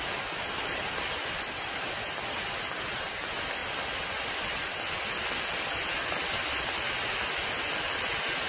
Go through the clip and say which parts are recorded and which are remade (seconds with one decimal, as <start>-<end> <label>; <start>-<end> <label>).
0.0-8.5 recorded